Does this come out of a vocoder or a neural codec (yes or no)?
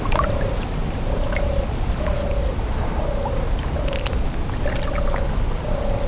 no